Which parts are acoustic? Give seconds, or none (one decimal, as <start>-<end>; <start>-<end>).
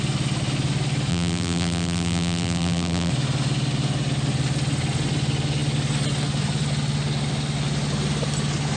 0.0-1.1; 3.1-8.8